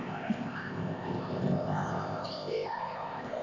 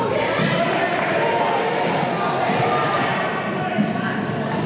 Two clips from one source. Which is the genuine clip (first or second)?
second